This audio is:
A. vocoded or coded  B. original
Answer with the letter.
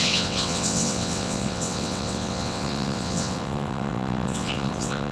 A